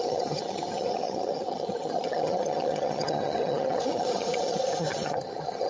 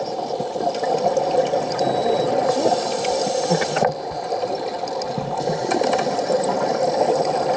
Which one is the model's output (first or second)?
first